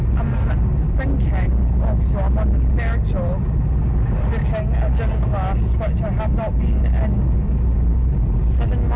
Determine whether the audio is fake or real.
real